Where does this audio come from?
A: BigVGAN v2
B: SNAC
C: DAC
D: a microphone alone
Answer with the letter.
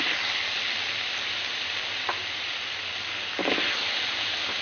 D